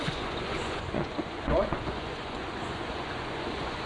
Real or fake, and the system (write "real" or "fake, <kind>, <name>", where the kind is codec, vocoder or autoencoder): fake, vocoder, Vocos